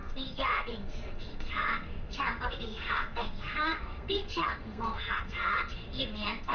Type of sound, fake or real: fake